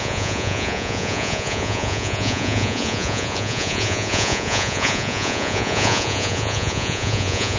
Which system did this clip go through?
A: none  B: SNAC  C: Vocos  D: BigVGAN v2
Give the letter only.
C